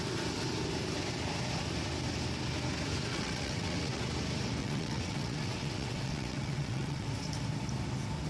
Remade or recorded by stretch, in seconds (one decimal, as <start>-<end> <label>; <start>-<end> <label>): 0.0-3.1 recorded; 3.1-4.0 remade; 4.0-4.6 recorded; 4.6-7.1 remade; 7.1-8.3 recorded